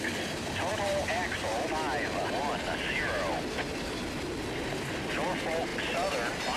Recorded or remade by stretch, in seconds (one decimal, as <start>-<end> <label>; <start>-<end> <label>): 0.0-6.6 recorded